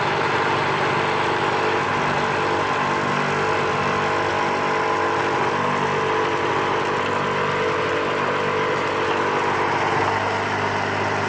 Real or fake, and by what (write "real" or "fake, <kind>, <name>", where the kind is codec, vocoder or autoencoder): real